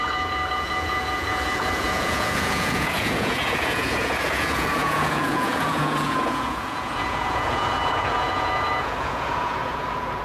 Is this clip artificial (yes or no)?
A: yes